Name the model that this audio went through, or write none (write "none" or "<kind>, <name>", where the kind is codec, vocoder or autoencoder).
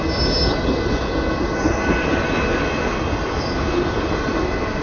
none